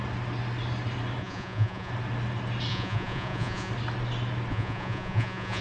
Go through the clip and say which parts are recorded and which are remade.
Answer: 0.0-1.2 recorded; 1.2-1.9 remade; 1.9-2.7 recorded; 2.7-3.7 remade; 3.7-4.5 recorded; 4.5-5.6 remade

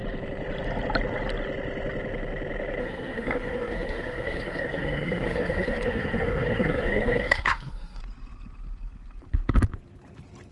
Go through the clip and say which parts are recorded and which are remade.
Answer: 0.0-2.8 recorded; 2.8-8.0 remade; 8.0-10.5 recorded

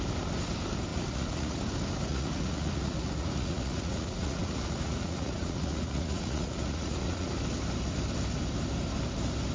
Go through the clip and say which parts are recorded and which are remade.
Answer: 0.0-0.9 recorded; 0.9-1.6 remade; 1.6-2.1 recorded; 2.1-7.3 remade; 7.3-9.5 recorded

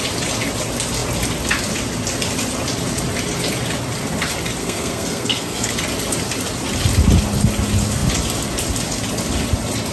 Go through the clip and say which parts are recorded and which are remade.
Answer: 0.0-4.6 recorded; 4.6-5.7 remade; 5.7-9.9 recorded

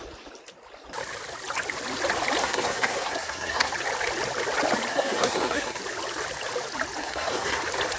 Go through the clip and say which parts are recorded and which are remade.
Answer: 0.0-2.4 recorded; 2.4-3.7 remade; 3.7-4.9 recorded; 4.9-5.8 remade; 5.8-7.0 recorded; 7.0-7.6 remade; 7.6-8.0 recorded

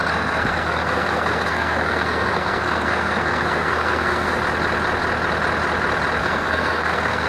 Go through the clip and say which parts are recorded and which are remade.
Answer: 0.0-4.4 remade; 4.4-6.2 recorded; 6.2-7.3 remade

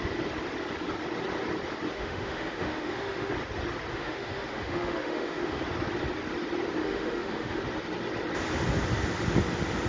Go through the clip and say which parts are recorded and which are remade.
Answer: 0.0-1.9 recorded; 1.9-3.3 remade; 3.3-3.9 recorded; 3.9-5.6 remade; 5.6-6.8 recorded; 6.8-7.6 remade; 7.6-9.9 recorded